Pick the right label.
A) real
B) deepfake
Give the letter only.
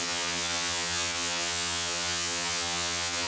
B